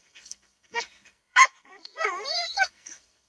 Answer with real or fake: fake